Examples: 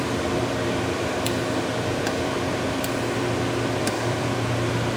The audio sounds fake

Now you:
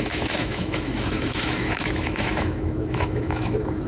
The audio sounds fake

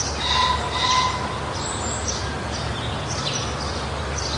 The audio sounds real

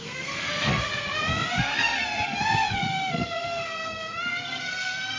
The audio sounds fake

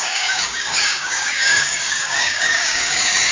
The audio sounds fake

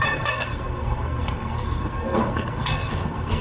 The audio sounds fake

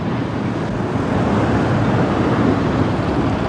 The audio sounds real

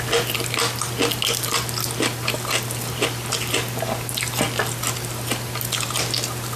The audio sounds real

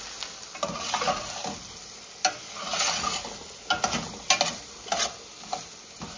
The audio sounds real